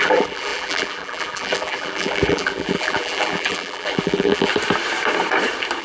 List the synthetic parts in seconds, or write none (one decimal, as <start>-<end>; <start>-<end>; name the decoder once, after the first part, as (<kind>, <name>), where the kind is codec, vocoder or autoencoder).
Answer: 0.0-4.5 (vocoder, BigVGAN v2)